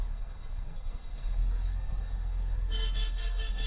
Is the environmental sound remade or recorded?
remade